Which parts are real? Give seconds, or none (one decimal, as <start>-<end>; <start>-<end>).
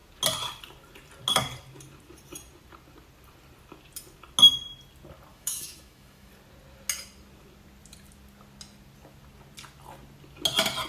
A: 0.0-5.3; 6.3-10.9